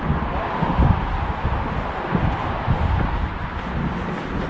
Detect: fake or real real